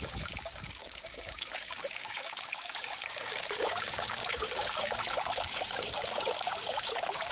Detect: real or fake fake